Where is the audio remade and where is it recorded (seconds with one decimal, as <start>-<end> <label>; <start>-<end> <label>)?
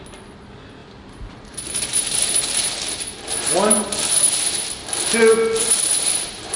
0.0-0.8 recorded; 0.8-3.8 remade; 3.8-5.6 recorded; 5.6-6.6 remade